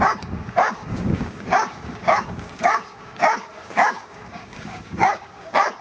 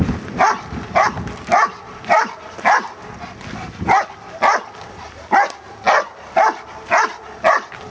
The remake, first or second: first